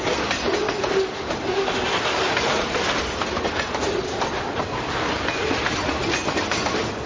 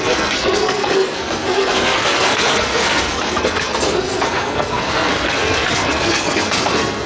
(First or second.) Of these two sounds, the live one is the first